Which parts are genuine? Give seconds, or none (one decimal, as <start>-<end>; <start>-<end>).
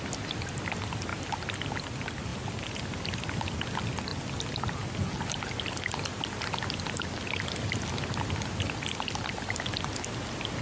0.0-10.6